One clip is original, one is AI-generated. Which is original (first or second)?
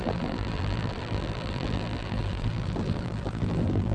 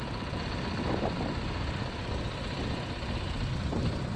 second